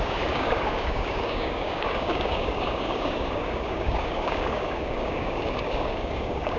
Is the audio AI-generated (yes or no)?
yes